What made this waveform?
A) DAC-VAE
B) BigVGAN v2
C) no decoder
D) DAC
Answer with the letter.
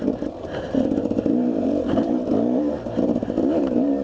B